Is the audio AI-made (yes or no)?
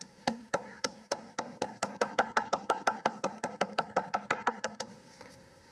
yes